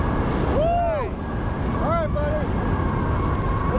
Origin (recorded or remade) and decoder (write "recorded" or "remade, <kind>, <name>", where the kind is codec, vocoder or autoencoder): recorded